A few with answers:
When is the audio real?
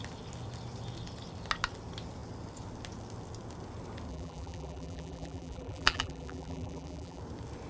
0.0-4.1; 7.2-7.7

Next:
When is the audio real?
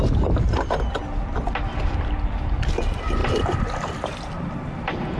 0.0-3.2; 3.9-5.2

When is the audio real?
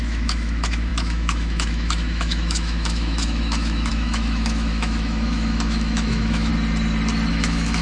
6.5-7.3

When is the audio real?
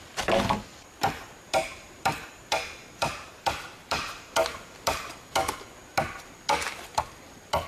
0.0-1.0; 5.1-7.7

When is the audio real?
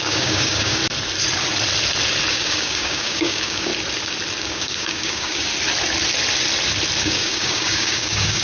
0.8-2.3; 3.7-4.4; 5.5-7.0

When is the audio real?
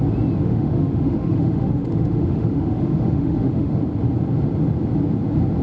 0.0-0.4; 3.8-5.6